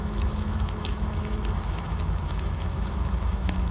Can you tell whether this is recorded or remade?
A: remade